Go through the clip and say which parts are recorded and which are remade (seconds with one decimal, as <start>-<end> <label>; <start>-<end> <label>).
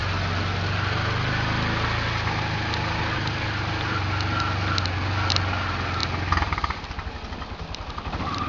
0.0-8.5 recorded